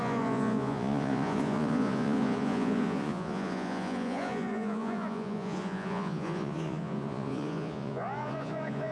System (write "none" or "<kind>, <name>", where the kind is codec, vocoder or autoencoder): vocoder, Vocos